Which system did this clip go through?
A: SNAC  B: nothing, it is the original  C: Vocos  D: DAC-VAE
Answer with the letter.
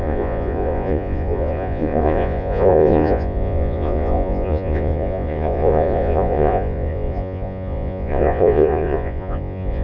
C